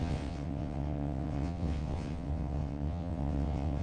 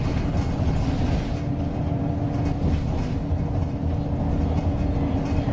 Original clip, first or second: second